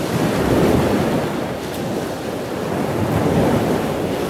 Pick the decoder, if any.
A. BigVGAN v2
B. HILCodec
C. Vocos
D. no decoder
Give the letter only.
D